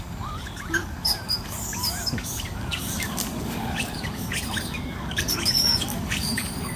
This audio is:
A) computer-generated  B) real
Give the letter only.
A